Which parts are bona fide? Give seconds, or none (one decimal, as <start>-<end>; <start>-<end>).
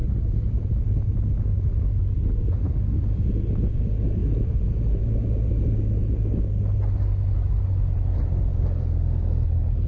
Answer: 0.0-8.5; 9.4-9.9